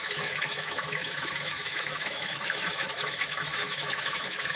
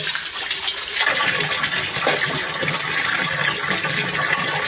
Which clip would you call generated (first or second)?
first